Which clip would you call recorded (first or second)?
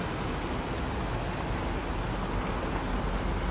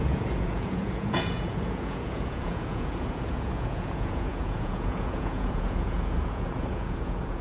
first